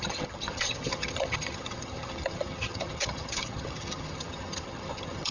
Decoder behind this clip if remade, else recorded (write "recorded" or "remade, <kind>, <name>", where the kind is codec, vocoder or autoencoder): remade, vocoder, HiFi-GAN